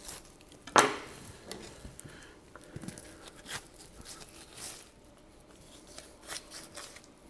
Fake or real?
fake